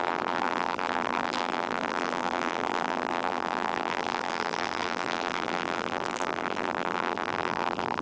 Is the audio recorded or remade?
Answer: remade